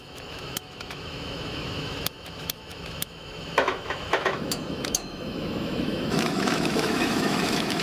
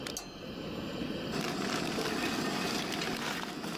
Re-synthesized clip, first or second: first